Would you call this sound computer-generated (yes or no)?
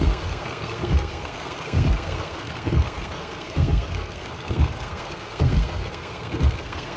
yes